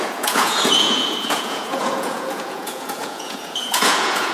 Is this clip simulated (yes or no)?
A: yes